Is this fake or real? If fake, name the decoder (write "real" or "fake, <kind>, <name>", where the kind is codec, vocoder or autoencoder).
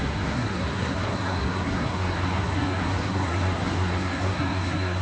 fake, codec, SNAC